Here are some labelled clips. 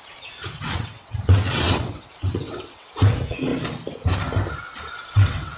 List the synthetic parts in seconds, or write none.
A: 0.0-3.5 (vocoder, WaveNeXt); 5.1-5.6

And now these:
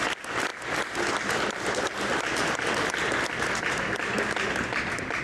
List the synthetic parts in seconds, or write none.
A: none

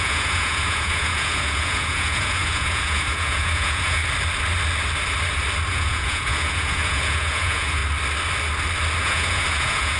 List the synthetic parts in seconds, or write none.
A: 0.0-4.0 (vocoder, Vocos); 5.7-7.8; 9.0-10.0

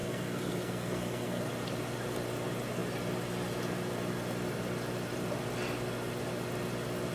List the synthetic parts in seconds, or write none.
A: 0.0-1.4 (codec, SNAC)

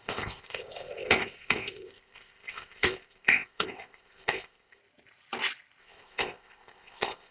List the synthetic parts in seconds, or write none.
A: 0.0-4.8 (codec, ZipCodec); 5.8-7.3